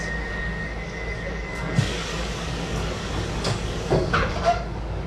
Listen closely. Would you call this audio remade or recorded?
remade